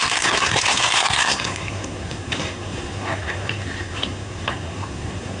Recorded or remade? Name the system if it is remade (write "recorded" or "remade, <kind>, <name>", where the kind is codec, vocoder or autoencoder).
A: remade, codec, SNAC